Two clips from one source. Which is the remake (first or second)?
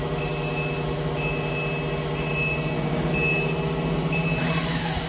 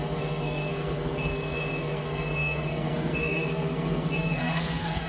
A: second